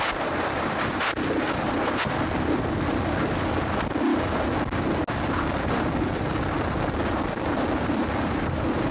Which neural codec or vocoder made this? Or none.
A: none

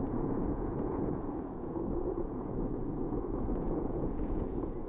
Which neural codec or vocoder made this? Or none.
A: vocoder, Vocos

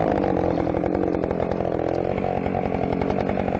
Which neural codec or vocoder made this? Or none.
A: none